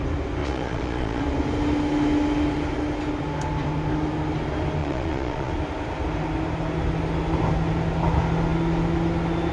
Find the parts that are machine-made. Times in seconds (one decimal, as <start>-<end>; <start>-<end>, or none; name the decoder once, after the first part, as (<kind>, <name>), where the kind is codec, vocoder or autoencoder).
0.4-1.2 (vocoder, Vocos); 4.8-5.5

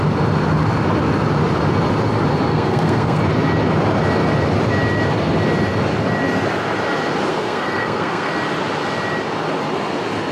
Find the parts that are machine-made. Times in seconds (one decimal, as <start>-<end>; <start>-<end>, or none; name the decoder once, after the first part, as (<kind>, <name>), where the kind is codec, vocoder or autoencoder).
2.5-3.2 (codec, SNAC); 7.3-8.3

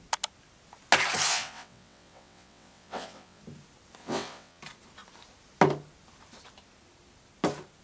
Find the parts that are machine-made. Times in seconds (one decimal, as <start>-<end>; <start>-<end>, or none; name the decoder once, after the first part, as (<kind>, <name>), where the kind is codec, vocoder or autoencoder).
1.3-3.4 (vocoder, WaveNeXt); 4.0-4.6